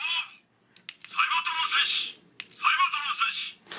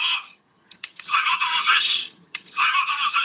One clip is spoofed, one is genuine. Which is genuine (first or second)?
first